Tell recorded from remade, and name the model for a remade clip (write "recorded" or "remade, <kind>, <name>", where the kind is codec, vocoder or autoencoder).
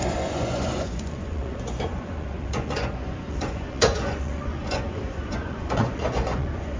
remade, vocoder, Vocos